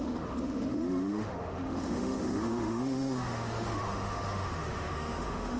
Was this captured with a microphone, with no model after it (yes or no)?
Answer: no